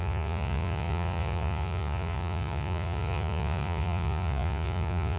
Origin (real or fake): fake